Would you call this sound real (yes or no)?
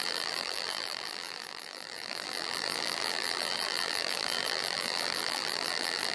no